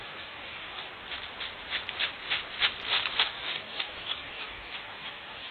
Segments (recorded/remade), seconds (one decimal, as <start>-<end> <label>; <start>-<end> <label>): 0.0-0.9 remade; 0.9-3.2 recorded; 3.2-5.5 remade